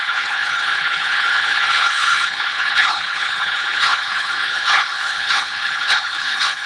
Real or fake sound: fake